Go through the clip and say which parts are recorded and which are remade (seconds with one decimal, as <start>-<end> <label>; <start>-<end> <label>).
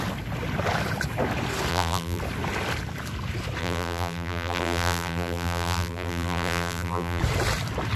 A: 0.0-1.7 recorded; 1.7-2.2 remade; 2.2-3.6 recorded; 3.6-7.2 remade; 7.2-8.0 recorded